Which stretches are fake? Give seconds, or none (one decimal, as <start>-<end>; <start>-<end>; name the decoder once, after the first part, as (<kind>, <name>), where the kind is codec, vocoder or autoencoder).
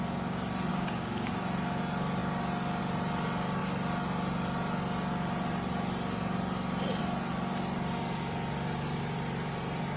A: 0.7-1.3 (codec, DAC)